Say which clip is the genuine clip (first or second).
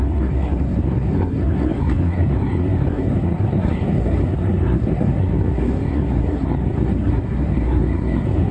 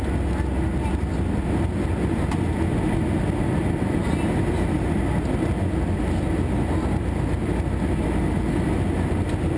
second